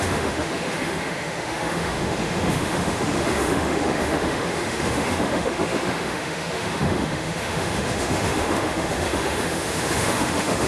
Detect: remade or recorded remade